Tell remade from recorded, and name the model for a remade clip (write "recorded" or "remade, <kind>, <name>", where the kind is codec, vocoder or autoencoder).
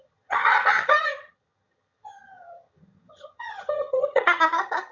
remade, vocoder, HiFi-GAN